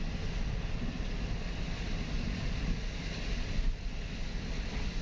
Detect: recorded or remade recorded